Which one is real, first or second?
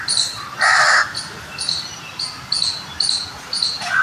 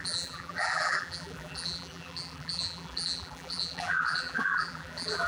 first